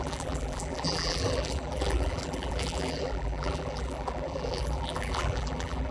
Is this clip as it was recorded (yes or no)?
no